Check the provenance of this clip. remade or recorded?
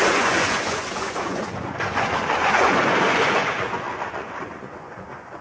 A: remade